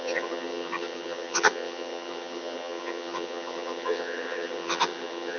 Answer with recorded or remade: remade